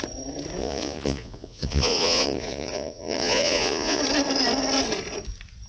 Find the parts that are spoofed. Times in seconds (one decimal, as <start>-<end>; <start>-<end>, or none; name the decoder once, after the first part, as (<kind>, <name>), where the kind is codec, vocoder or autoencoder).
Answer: 0.6-4.0 (vocoder, Vocos)